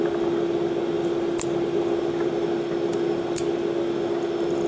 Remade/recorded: recorded